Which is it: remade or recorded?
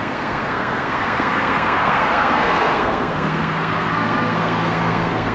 remade